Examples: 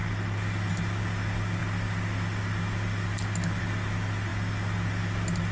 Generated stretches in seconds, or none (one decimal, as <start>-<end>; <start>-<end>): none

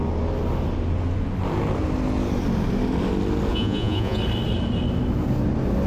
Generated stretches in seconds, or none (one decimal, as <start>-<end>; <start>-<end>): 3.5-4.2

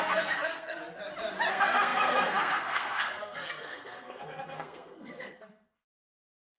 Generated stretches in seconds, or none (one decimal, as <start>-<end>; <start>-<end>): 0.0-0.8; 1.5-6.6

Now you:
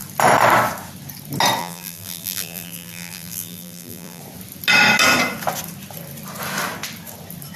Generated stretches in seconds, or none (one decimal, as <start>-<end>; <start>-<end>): 1.6-4.2

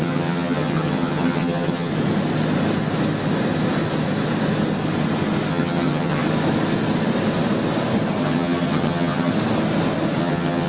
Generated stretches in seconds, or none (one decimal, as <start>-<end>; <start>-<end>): 0.0-1.9; 5.5-6.2; 8.2-9.3; 10.2-10.7

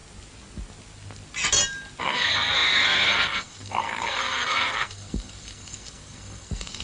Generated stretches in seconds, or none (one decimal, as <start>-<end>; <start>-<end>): 2.0-6.8